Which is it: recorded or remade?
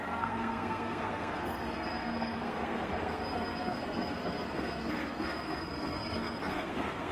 remade